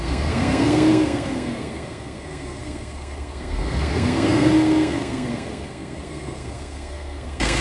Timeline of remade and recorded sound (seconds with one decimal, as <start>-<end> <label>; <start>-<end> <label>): 0.0-7.6 remade